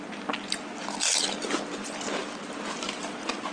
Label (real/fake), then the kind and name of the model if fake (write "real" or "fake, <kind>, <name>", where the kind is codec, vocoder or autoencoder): real